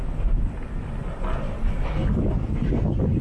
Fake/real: real